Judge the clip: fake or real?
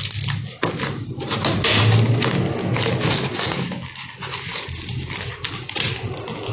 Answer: real